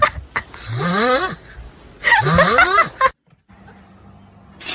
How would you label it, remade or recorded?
recorded